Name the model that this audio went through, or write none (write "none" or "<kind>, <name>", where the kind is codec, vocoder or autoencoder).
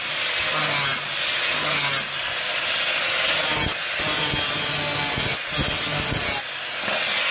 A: none